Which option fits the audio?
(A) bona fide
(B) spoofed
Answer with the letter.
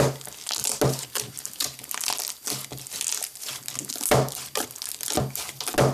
A